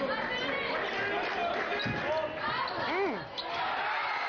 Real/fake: real